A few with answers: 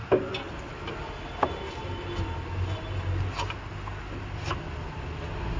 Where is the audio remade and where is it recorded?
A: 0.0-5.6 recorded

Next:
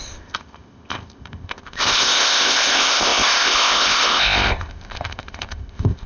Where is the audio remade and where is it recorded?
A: 0.0-6.1 remade